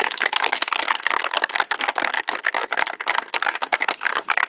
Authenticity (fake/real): fake